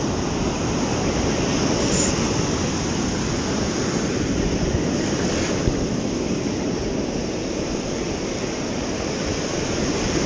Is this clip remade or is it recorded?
recorded